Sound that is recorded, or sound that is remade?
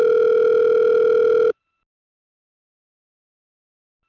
recorded